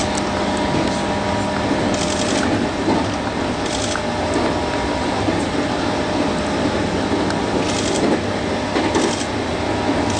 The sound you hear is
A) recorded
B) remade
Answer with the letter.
A